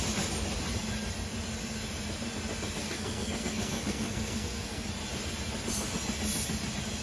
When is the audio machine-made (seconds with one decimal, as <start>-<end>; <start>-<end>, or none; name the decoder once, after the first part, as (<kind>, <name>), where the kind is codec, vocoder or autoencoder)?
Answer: 2.8-4.9 (codec, SNAC)